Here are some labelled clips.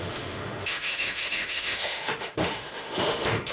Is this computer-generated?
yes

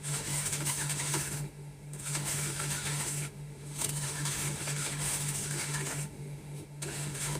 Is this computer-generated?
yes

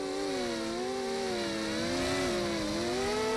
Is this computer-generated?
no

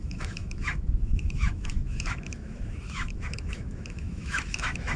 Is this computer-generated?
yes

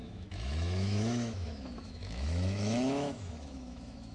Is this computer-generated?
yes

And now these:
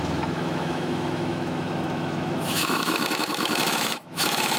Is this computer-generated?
yes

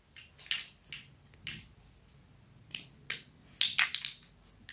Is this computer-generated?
no